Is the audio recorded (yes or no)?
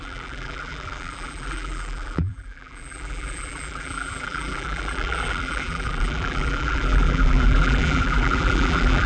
no